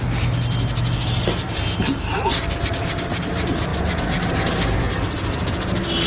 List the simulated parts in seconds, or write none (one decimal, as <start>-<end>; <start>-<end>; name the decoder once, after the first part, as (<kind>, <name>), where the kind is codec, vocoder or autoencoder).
none